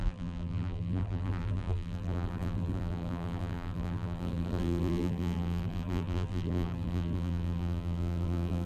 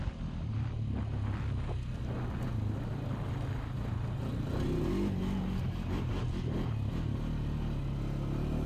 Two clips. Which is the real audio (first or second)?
second